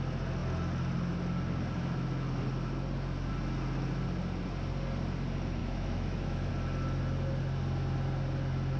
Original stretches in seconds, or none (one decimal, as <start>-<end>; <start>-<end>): 0.0-5.6; 6.5-8.8